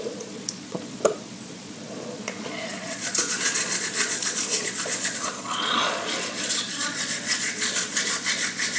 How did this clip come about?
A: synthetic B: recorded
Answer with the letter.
A